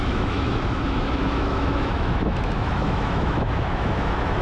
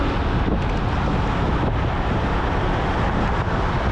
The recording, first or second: second